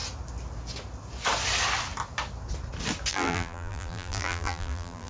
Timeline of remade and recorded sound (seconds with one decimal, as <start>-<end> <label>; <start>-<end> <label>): 0.0-3.1 recorded; 3.1-5.1 remade